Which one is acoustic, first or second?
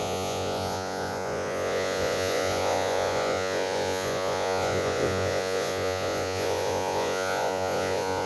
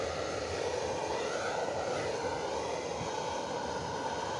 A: second